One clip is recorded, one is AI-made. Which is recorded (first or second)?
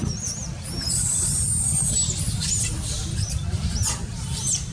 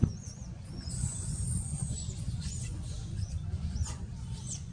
first